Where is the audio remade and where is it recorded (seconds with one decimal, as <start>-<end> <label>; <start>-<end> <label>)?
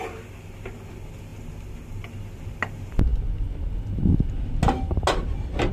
0.0-5.7 recorded